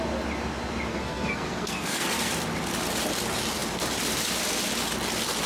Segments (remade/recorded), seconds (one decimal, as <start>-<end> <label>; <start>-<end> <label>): 0.0-0.9 recorded; 0.9-2.3 remade; 2.3-5.5 recorded